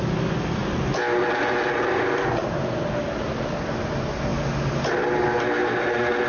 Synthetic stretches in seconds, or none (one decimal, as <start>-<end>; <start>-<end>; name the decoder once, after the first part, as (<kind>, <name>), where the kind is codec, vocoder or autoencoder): none